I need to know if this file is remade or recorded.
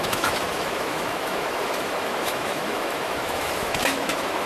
remade